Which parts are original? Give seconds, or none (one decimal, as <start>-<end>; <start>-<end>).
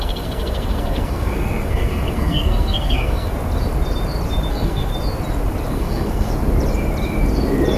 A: 3.3-4.5; 4.9-5.7; 6.3-7.8